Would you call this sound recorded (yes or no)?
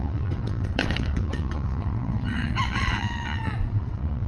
no